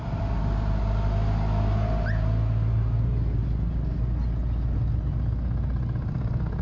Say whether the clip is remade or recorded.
recorded